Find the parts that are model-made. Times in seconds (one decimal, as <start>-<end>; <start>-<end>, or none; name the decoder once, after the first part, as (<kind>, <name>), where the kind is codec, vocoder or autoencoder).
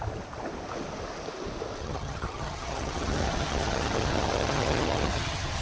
1.8-5.6 (vocoder, HiFi-GAN)